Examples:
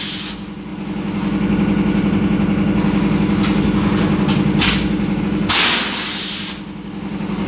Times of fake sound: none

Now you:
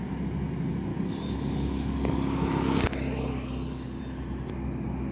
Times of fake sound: 0.9-4.0 (codec, DAC)

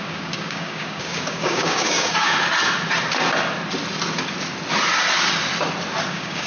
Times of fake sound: 0.0-2.3 (codec, DAC); 6.1-6.5